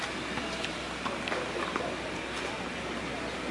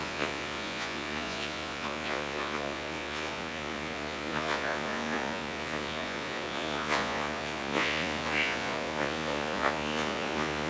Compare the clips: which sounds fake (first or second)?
second